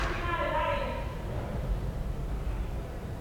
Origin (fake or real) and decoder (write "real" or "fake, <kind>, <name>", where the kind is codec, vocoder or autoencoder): real